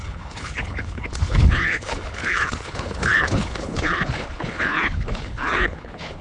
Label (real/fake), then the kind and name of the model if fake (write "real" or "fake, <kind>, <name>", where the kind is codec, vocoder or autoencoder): fake, codec, HILCodec